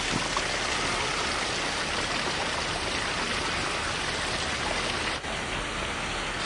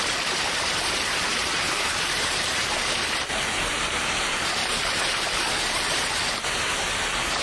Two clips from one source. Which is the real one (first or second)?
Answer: first